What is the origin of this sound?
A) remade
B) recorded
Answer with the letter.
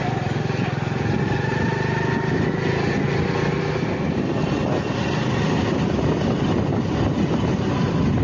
B